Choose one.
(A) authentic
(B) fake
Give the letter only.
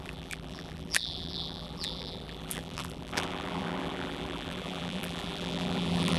B